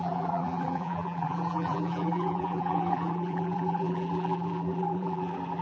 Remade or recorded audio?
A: remade